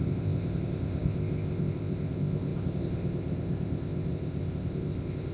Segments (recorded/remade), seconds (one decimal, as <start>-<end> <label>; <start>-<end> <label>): 0.0-5.3 remade